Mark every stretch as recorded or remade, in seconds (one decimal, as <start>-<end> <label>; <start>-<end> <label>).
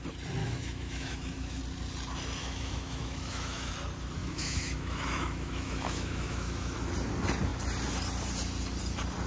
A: 0.0-0.4 recorded; 0.4-1.6 remade; 1.6-2.4 recorded; 2.4-3.7 remade; 3.7-4.2 recorded; 4.2-6.9 remade; 6.9-9.3 recorded